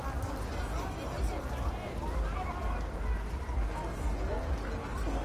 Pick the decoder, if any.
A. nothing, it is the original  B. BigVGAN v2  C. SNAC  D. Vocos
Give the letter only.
A